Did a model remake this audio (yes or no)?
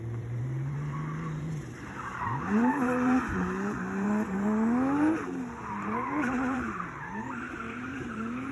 yes